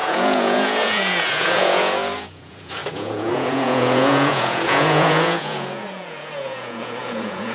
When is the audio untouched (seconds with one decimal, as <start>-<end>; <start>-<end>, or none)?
none